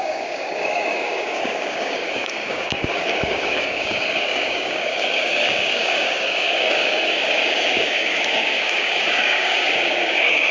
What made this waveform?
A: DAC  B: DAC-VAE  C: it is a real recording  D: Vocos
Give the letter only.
A